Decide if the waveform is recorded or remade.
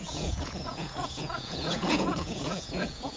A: remade